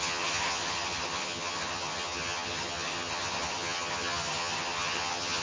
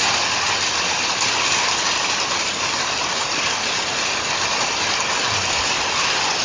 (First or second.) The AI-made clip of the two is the first